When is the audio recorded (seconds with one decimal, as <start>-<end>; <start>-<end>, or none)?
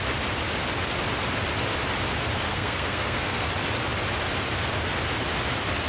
0.0-2.5; 3.5-5.9